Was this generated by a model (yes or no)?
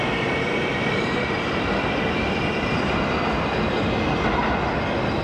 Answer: yes